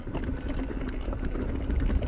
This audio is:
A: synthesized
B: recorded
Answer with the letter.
B